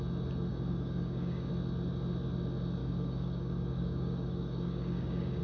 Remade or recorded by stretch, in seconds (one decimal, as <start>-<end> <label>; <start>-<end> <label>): 0.0-0.5 recorded; 0.5-1.5 remade; 1.5-2.8 recorded; 2.8-5.4 remade

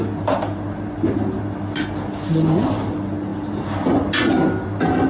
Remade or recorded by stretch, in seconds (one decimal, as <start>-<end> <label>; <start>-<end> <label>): 0.0-5.1 recorded

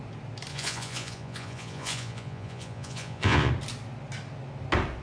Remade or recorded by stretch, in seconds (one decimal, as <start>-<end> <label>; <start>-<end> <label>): 0.0-0.5 recorded; 0.5-3.5 remade; 3.5-5.0 recorded

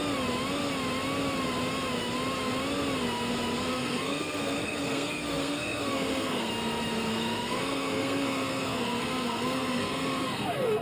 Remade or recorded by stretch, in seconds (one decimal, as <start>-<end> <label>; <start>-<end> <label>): 0.0-3.7 recorded; 3.7-6.5 remade; 6.5-7.1 recorded; 7.1-10.8 remade

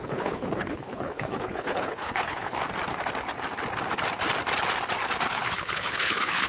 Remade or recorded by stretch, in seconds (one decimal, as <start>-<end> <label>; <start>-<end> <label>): 0.0-2.6 remade; 2.6-5.3 recorded; 5.3-6.5 remade

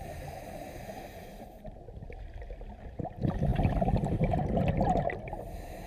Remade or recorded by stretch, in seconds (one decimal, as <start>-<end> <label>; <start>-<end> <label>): 0.0-5.9 recorded

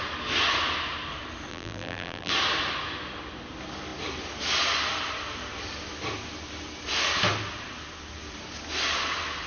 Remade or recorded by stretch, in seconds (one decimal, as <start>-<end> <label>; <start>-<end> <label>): 0.0-1.5 recorded; 1.5-2.3 remade; 2.3-9.5 recorded